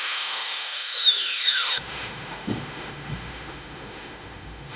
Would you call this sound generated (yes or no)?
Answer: yes